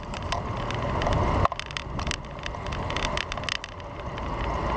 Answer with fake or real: real